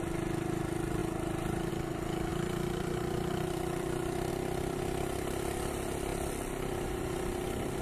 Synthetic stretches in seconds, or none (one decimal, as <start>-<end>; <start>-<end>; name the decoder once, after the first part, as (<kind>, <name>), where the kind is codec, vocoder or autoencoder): 2.3-4.3 (vocoder, BigVGAN v2); 6.1-7.0